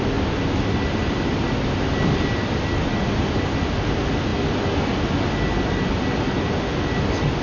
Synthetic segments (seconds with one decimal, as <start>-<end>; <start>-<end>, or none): none